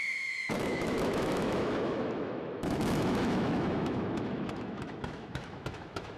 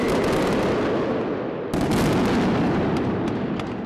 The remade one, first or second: first